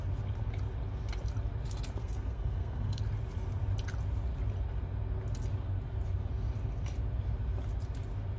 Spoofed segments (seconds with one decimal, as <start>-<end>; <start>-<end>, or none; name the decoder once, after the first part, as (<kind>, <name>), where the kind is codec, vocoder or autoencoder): 2.0-3.0 (codec, SNAC)